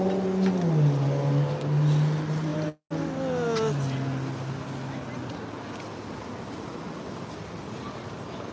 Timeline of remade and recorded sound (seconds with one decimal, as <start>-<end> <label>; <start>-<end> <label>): 0.0-8.5 recorded